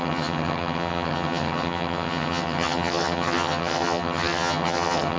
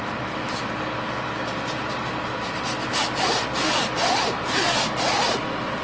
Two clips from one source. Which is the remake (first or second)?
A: first